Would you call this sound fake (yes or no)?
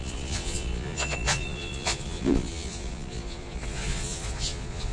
yes